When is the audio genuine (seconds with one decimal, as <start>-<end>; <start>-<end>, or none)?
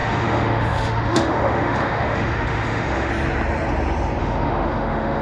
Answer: 3.1-4.2